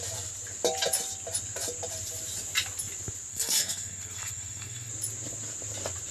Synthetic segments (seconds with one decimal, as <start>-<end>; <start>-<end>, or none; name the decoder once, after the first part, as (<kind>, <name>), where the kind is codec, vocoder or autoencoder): 3.3-4.9 (codec, SNAC)